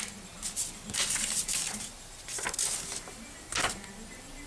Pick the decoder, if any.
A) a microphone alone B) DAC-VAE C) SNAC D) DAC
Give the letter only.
A